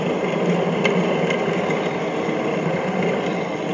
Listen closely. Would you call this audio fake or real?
real